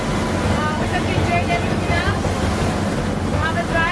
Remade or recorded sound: recorded